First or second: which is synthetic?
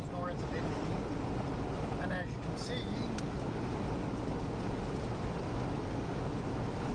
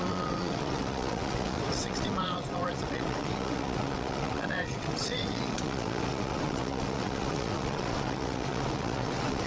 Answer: second